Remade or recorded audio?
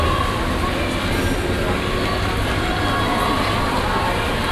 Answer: recorded